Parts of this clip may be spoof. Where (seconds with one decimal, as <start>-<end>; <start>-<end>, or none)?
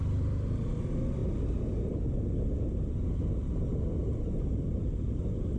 none